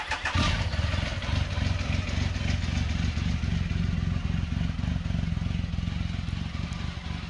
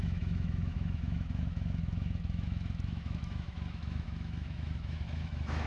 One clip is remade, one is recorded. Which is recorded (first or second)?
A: first